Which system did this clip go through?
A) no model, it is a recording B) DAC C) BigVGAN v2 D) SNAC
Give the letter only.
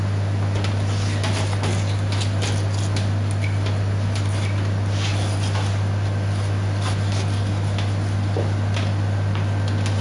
A